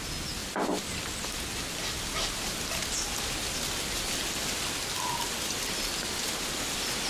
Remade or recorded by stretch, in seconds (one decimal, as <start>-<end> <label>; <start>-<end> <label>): 0.0-7.1 recorded